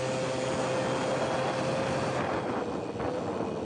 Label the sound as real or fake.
real